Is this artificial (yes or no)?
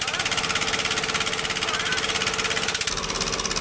no